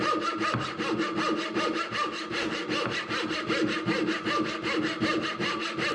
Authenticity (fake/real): real